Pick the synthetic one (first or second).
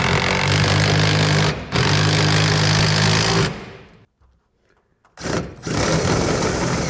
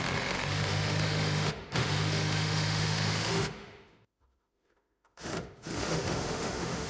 second